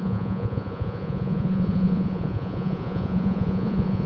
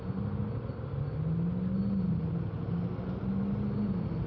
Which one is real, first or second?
second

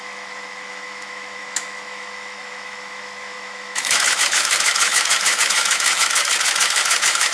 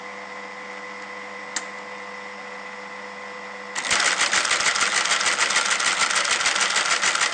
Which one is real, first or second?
second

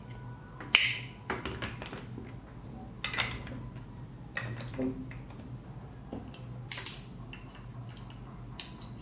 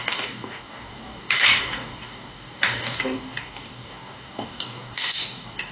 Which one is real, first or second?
first